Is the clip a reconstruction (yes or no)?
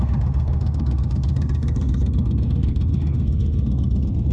yes